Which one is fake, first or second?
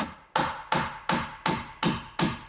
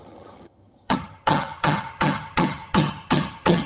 second